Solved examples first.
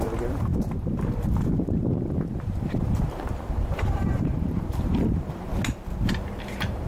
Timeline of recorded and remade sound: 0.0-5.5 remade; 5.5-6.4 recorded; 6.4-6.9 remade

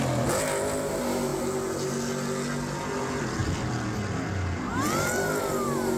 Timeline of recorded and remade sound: 0.0-6.0 recorded

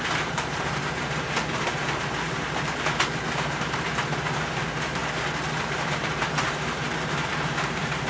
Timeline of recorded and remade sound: 0.0-5.0 remade; 5.0-5.6 recorded; 5.6-8.1 remade

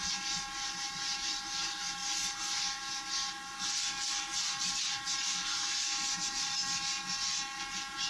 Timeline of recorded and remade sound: 0.0-8.1 recorded

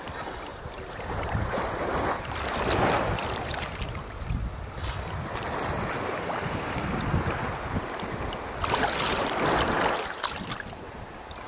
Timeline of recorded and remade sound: 0.0-0.5 recorded; 0.5-2.3 remade; 2.3-11.5 recorded

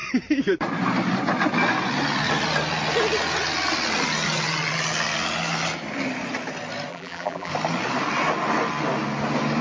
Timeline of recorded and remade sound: 0.0-6.9 recorded; 6.9-7.5 remade; 7.5-9.6 recorded